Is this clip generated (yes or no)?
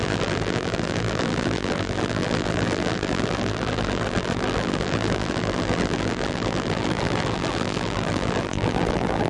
yes